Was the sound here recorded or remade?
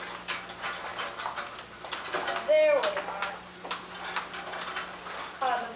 recorded